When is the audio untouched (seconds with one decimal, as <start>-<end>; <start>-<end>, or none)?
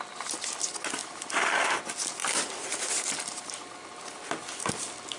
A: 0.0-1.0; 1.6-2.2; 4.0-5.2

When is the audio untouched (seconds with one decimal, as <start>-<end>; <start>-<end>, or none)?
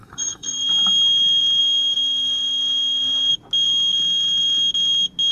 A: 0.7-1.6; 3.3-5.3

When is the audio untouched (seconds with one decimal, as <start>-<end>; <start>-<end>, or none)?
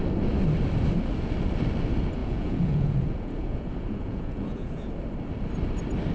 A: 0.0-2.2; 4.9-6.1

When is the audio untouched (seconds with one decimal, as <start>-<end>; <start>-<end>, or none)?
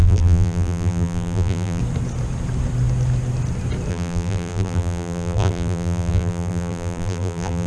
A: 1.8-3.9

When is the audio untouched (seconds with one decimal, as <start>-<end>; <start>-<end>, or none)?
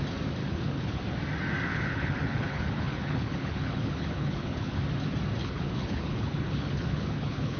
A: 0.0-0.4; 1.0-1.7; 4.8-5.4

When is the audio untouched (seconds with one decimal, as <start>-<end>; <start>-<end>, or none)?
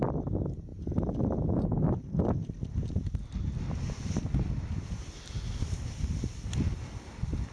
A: 0.0-7.5